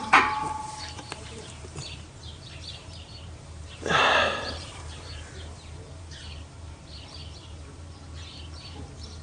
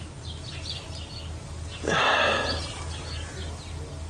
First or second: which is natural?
second